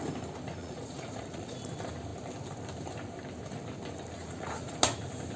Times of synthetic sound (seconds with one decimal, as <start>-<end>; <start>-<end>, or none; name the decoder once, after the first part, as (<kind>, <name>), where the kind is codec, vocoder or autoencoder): 0.6-1.6 (vocoder, Vocos); 4.2-4.8